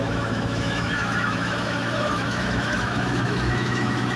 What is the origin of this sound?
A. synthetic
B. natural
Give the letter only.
A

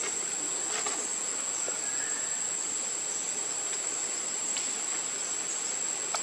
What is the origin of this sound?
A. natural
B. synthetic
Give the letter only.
A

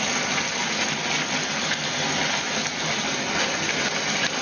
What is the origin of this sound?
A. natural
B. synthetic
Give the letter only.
A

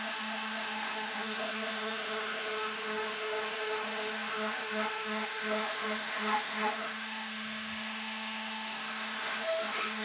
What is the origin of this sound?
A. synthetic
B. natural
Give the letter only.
A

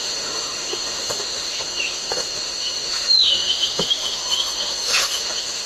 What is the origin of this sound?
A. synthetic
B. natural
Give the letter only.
A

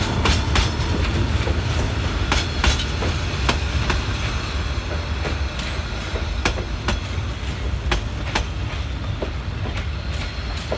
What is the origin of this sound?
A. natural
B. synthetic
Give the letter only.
A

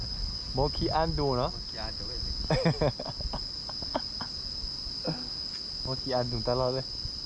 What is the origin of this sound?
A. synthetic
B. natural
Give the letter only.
B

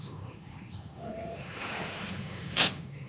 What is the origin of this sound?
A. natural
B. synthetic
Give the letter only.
B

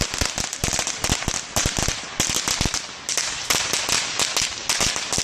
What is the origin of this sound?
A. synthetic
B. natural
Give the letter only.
B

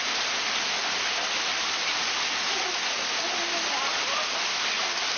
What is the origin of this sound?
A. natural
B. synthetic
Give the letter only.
A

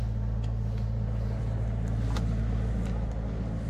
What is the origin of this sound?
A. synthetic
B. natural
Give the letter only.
B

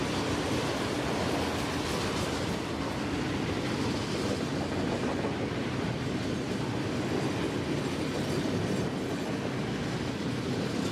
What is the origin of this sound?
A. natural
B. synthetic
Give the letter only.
A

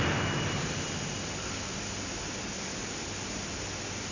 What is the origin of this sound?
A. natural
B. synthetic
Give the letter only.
A